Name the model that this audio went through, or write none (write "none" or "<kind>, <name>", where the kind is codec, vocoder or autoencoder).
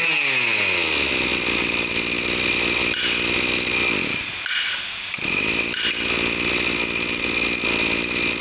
none